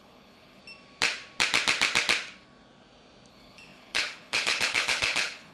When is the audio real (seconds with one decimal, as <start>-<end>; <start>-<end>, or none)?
0.6-3.3